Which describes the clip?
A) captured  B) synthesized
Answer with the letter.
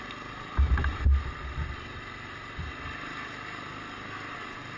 A